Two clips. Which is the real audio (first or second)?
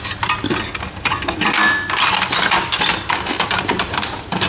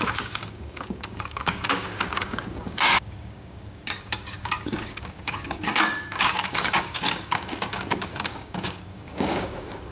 first